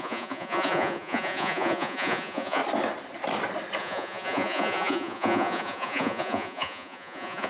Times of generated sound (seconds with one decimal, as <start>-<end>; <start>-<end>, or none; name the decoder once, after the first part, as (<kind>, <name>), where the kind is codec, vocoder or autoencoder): 0.0-2.6 (vocoder, Vocos); 3.8-7.5